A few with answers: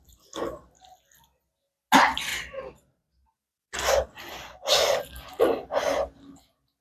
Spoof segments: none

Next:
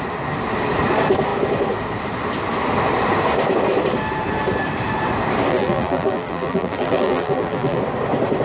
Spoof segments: 5.5-7.8 (vocoder, BigVGAN v2)

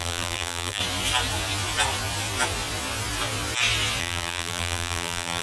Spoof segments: 0.0-0.8 (vocoder, BigVGAN v2); 4.0-5.4

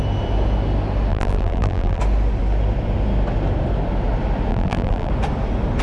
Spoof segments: 1.1-2.0 (vocoder, BigVGAN v2); 4.5-5.1

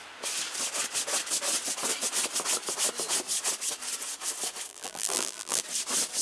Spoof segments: 4.7-5.6 (vocoder, BigVGAN v2)